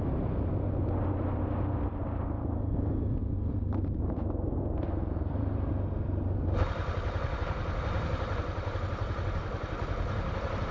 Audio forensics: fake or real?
real